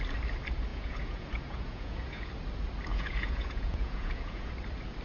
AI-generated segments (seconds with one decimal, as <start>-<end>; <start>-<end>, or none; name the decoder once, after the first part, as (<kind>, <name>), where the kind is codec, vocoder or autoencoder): 0.7-2.3 (vocoder, Vocos); 2.9-4.5